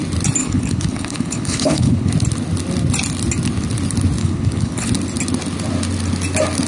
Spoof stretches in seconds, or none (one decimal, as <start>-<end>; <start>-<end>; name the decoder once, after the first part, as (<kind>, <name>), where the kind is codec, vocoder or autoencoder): 0.4-2.1 (codec, HILCodec); 4.2-4.9